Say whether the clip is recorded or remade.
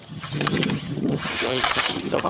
remade